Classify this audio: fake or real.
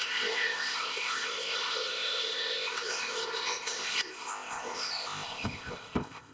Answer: fake